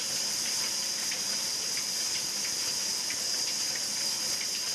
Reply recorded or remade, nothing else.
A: recorded